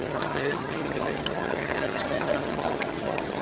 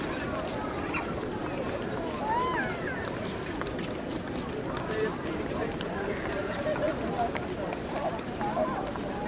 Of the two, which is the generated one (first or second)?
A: first